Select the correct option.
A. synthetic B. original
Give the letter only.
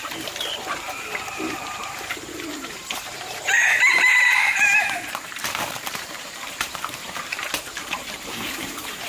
A